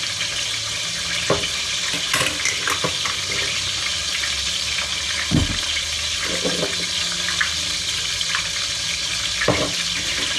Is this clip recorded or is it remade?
recorded